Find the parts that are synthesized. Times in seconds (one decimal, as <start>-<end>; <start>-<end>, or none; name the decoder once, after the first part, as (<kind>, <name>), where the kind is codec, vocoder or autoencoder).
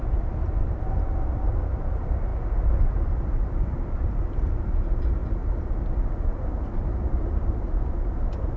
0.0-5.2 (vocoder, BigVGAN v2); 6.2-8.6